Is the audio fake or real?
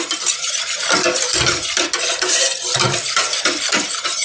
real